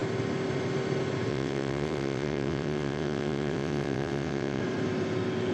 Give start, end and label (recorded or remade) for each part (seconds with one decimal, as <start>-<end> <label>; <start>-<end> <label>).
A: 0.0-1.3 recorded; 1.3-4.6 remade; 4.6-5.5 recorded